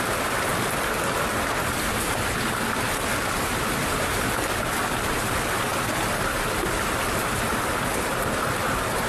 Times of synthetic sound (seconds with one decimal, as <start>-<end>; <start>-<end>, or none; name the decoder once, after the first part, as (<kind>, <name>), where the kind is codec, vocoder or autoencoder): none

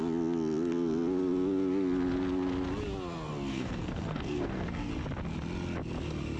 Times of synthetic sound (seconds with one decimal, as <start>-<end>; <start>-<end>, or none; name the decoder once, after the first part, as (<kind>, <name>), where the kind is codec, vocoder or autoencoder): 3.5-4.9 (codec, SNAC)

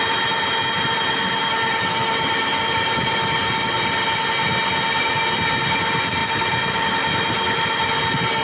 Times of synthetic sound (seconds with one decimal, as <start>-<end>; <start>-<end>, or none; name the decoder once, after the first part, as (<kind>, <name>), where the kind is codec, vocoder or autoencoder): none